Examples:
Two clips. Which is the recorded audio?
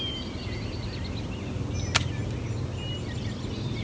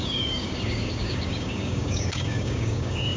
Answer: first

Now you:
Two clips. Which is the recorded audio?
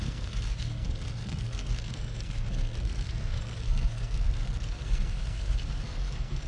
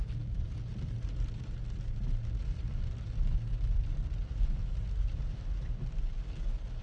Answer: second